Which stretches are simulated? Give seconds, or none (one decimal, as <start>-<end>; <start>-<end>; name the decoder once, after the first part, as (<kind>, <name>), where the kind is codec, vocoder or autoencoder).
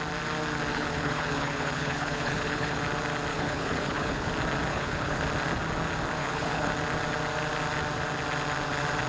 0.7-2.8 (codec, HILCodec); 3.3-4.3; 4.7-5.2; 6.2-6.7